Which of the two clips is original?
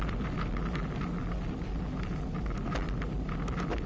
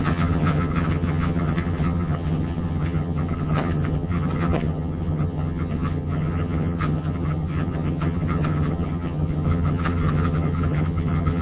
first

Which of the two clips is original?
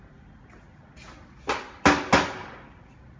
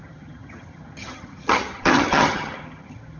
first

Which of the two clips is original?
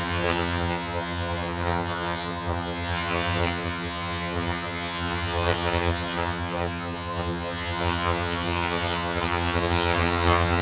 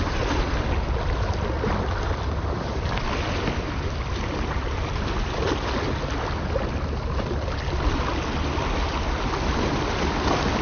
second